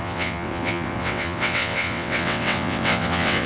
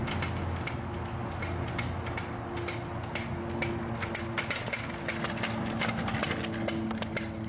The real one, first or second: second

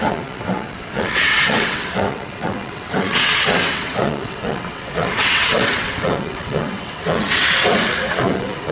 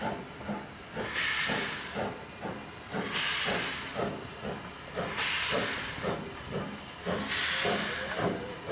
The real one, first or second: second